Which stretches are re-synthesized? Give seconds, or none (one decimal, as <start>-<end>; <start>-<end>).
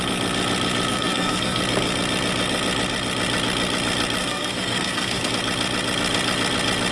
0.9-1.6; 4.2-5.3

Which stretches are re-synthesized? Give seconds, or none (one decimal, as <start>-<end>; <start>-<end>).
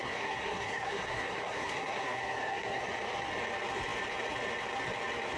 0.0-2.8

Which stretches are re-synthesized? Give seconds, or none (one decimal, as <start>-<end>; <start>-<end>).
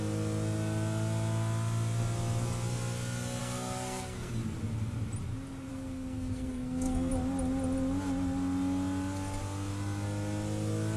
3.4-4.3; 5.7-7.1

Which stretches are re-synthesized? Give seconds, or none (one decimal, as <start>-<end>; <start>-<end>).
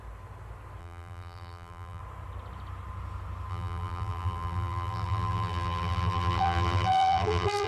0.8-2.0; 3.5-7.7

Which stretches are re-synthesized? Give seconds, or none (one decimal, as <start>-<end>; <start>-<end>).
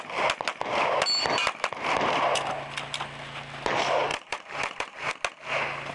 4.1-5.1